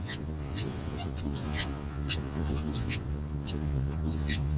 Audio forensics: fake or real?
fake